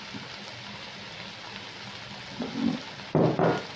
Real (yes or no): yes